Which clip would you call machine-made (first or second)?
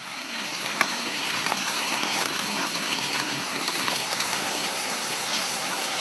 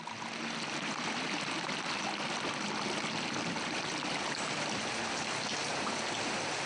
first